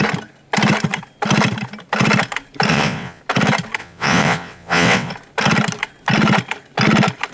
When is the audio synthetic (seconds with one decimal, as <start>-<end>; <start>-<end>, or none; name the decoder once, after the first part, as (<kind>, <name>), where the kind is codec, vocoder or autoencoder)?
2.7-3.2 (vocoder, WaveNeXt); 3.8-5.1